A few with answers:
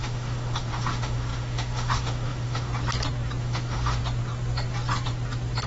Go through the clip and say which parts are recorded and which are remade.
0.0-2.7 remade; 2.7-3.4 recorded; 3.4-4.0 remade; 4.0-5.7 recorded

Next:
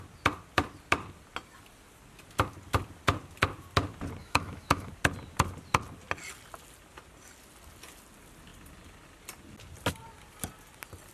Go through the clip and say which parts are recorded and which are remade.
0.0-4.2 recorded; 4.2-4.9 remade; 4.9-11.1 recorded